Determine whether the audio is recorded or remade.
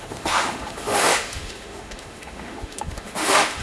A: remade